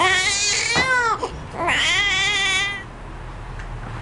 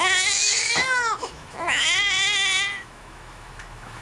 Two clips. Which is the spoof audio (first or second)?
second